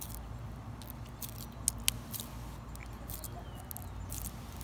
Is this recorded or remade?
recorded